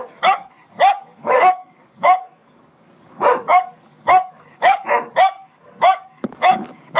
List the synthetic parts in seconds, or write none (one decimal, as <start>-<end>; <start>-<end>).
0.0-7.0